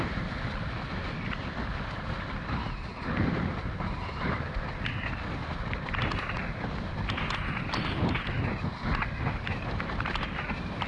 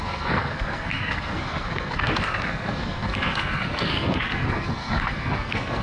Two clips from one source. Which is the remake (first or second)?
second